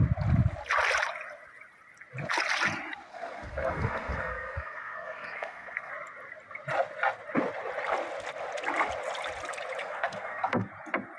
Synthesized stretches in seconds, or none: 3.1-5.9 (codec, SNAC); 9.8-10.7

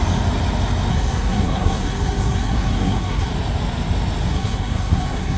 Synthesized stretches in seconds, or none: 0.9-3.3 (codec, SNAC); 4.3-5.4

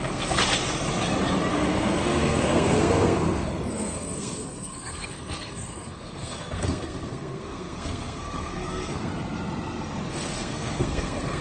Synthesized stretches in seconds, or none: 0.0-0.4 (codec, SNAC); 1.5-9.1; 10.1-11.4

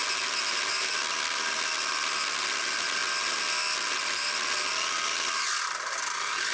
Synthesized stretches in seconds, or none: none

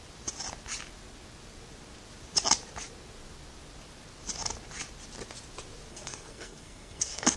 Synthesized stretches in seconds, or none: 5.9-7.4 (codec, SNAC)